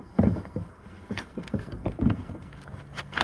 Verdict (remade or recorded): remade